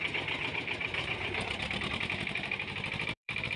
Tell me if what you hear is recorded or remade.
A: remade